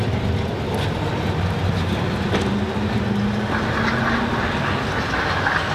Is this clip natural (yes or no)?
yes